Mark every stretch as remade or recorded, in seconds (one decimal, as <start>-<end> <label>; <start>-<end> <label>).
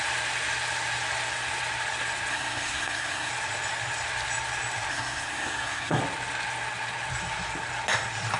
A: 0.0-2.3 recorded; 2.3-3.3 remade; 3.3-4.9 recorded; 4.9-6.0 remade; 6.0-8.4 recorded